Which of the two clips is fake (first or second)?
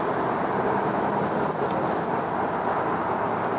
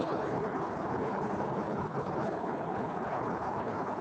second